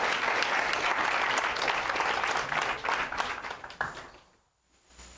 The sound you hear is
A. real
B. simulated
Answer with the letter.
A